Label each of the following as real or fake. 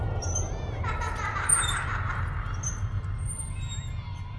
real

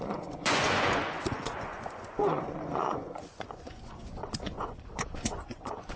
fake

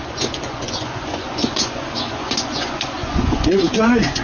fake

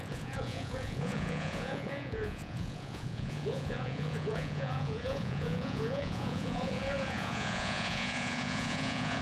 fake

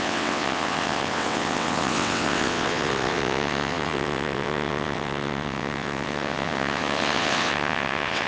fake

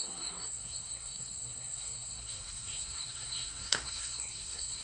fake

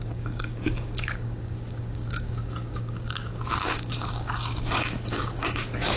fake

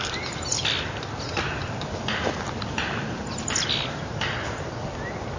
real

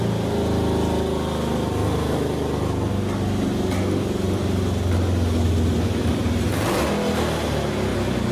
real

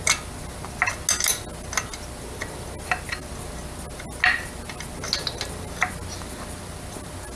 real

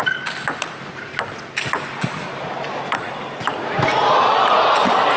real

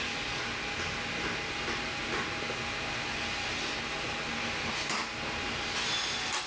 real